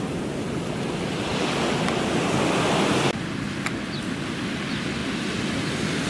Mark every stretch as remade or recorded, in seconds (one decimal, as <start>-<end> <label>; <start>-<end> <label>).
0.0-6.1 recorded